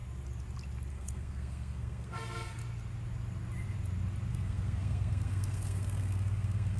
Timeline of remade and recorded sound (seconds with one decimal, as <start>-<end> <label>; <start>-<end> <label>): 0.0-0.9 recorded; 0.9-2.6 remade; 2.6-4.3 recorded; 4.3-6.8 remade